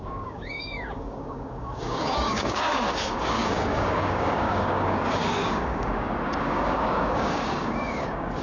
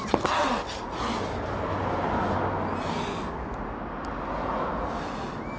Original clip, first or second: second